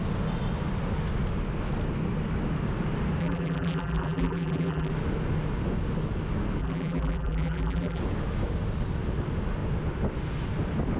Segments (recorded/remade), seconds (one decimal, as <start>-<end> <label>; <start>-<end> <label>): 0.0-3.2 recorded; 3.2-4.9 remade; 4.9-6.6 recorded; 6.6-8.0 remade; 8.0-11.0 recorded